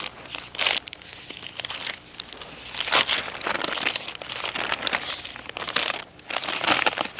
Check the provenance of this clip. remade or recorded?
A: recorded